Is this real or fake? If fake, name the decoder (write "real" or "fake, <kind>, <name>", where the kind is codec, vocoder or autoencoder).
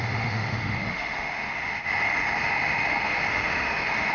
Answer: fake, autoencoder, DAC-VAE